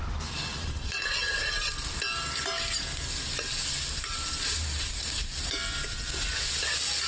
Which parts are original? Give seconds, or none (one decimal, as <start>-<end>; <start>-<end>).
0.0-0.5; 1.0-7.1

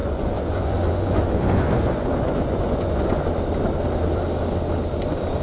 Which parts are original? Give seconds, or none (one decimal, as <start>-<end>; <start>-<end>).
3.2-5.4

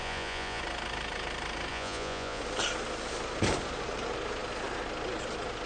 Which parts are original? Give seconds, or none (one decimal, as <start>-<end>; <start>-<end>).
0.6-1.7; 2.4-5.7

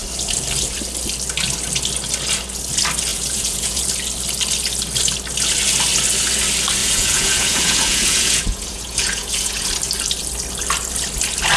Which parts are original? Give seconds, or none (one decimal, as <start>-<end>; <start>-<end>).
0.0-3.1; 3.9-6.8; 9.7-11.6

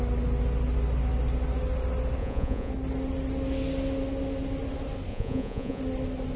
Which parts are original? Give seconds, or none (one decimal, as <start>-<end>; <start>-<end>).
0.0-2.2; 2.7-5.1; 5.8-6.4

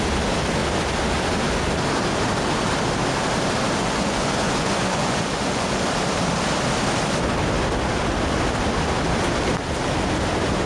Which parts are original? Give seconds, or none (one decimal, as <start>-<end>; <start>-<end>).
0.0-3.8; 5.7-10.7